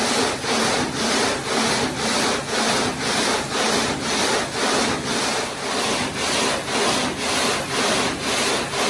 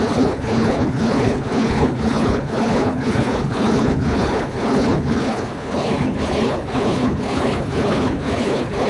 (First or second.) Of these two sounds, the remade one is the second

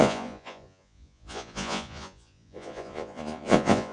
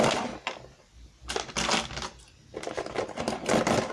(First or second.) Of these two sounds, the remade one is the first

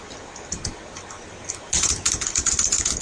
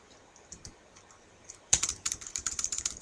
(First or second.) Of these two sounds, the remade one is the second